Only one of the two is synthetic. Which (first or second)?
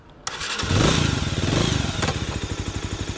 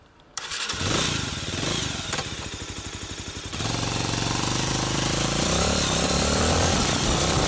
second